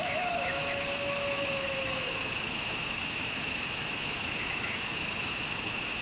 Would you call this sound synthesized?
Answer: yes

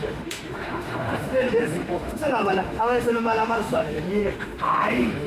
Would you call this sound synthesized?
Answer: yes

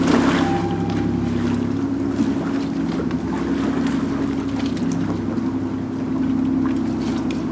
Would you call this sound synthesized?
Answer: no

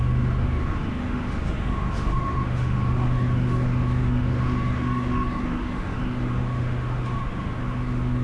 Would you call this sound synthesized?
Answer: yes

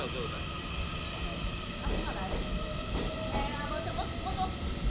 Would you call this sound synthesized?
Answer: no